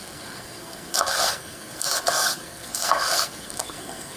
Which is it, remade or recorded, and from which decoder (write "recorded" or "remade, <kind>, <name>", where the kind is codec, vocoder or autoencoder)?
remade, codec, SNAC